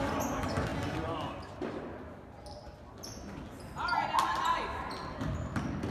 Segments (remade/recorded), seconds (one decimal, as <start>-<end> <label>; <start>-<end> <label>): 0.0-5.9 recorded